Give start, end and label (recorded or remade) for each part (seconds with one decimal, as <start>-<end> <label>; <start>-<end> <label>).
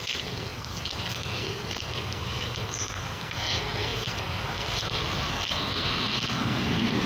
0.0-7.1 remade